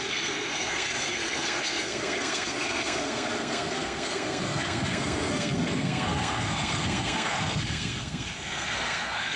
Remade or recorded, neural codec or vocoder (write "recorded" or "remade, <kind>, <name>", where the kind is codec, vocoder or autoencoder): remade, codec, SNAC